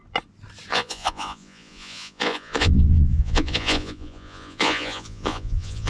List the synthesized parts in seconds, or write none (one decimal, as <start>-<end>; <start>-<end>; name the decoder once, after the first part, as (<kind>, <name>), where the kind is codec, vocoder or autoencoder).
0.7-5.9 (vocoder, Vocos)